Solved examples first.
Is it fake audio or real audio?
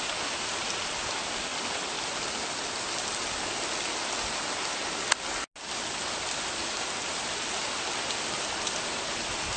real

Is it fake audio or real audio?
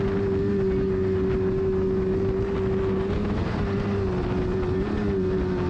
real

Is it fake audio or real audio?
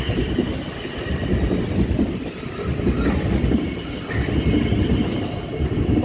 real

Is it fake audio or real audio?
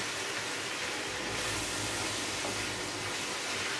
real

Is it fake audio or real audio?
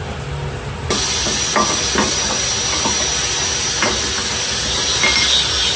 real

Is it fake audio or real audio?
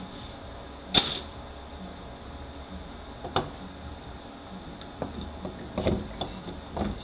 real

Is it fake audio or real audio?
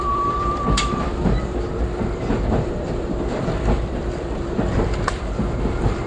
fake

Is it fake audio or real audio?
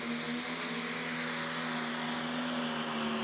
real